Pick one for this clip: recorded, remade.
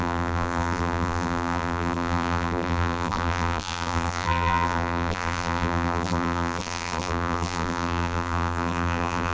remade